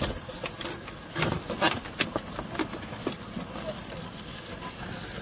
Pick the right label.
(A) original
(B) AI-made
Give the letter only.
A